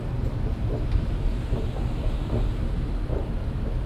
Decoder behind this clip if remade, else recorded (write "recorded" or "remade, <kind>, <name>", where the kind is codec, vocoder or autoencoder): recorded